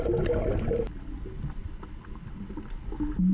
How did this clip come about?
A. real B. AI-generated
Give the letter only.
A